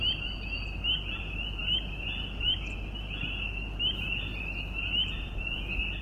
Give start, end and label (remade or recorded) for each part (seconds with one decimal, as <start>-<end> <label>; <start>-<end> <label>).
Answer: 0.0-6.0 recorded